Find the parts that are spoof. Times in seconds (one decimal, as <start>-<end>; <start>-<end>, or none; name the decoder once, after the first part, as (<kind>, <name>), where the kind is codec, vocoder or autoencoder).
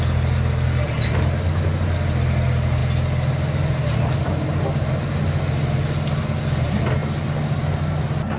none